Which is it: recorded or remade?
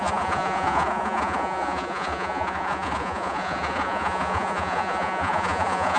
remade